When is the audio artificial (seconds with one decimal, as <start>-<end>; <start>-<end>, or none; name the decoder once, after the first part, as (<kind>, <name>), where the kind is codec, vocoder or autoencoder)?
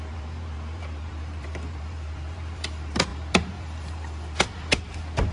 0.0-5.3 (vocoder, BigVGAN v2)